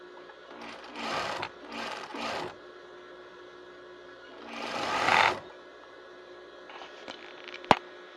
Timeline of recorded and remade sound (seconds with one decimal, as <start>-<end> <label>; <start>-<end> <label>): 0.0-8.2 recorded